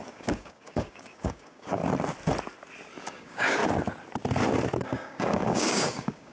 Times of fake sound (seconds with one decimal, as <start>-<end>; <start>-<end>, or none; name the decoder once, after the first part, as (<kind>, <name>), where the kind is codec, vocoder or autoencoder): 0.0-1.8 (codec, DAC); 3.0-3.6; 4.8-6.3